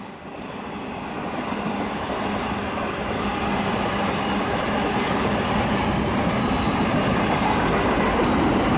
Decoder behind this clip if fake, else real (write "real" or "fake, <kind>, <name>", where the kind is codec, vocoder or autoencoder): real